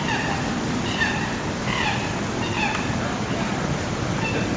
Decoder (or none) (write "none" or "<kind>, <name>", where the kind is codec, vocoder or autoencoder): none